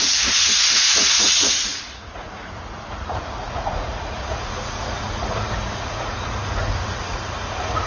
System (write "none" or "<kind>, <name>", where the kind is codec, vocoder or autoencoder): vocoder, Vocos